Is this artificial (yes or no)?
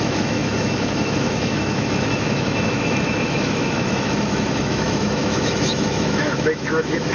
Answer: yes